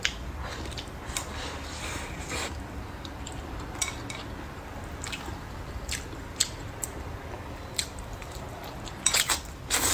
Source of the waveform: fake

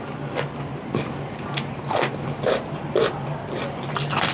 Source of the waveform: real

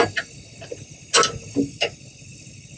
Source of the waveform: real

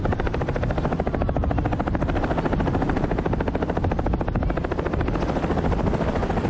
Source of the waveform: real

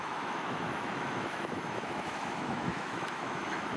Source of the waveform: fake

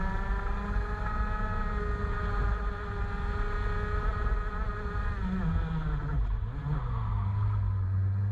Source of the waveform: real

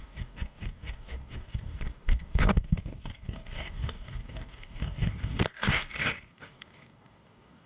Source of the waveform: fake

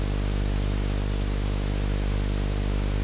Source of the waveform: real